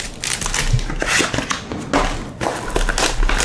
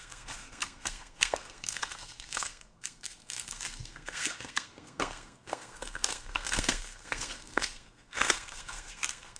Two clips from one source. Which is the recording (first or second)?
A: first